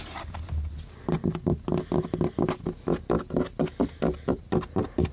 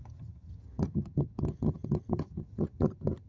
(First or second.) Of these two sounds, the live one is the first